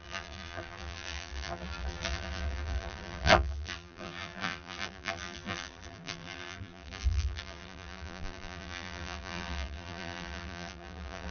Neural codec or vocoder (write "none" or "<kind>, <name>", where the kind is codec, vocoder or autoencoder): vocoder, BigVGAN v2